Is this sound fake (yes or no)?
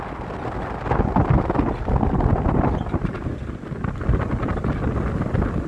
no